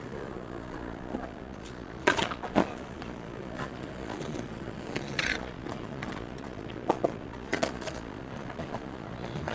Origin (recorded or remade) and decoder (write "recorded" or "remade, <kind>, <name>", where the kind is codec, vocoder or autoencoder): remade, vocoder, Vocos